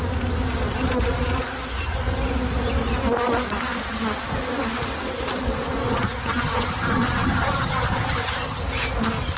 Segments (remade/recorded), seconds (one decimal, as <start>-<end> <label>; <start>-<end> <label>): 0.0-5.8 recorded; 5.8-8.6 remade; 8.6-9.4 recorded